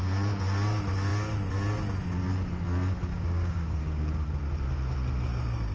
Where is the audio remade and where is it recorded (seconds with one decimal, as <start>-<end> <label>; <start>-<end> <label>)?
0.0-3.1 recorded; 3.1-4.3 remade; 4.3-5.7 recorded